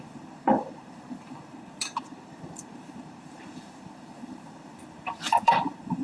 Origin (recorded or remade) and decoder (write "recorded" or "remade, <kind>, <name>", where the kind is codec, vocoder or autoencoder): remade, vocoder, BigVGAN v2